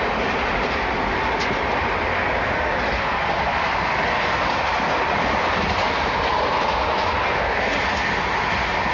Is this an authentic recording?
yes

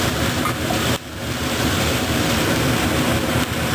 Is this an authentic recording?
no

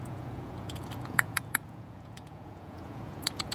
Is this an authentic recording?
no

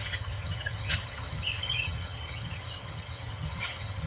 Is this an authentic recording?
no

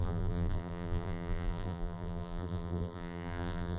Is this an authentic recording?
no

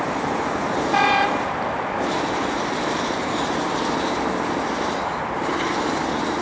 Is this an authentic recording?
yes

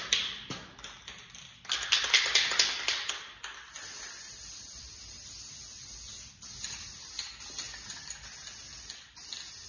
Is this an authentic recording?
yes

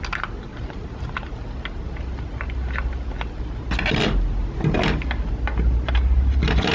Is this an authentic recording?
yes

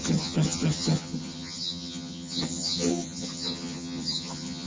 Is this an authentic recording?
no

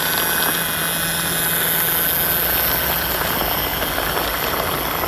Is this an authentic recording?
yes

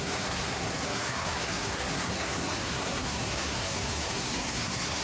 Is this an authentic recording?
no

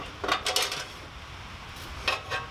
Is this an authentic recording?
yes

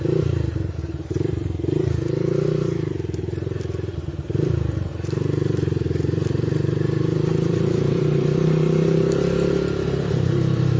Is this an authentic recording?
no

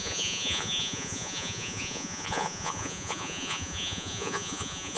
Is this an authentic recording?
no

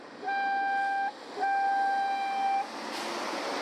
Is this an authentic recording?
yes